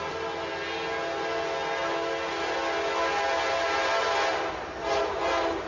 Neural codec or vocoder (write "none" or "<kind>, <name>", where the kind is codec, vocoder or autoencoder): none